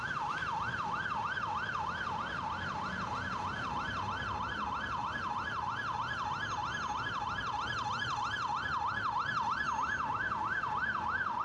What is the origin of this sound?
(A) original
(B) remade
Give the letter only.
A